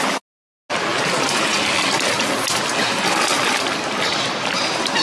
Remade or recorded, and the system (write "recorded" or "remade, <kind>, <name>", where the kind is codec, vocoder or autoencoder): recorded